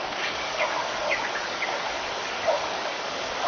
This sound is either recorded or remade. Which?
remade